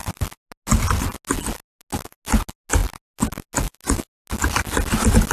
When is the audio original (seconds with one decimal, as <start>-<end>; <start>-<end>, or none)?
0.0-5.3